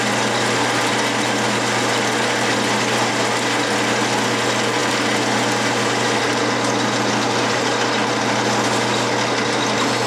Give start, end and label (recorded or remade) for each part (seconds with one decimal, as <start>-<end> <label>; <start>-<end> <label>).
0.0-10.1 recorded